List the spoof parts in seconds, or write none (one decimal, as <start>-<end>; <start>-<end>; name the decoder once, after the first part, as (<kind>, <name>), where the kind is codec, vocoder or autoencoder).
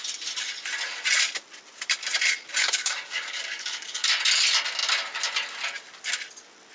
2.6-4.1 (codec, DAC)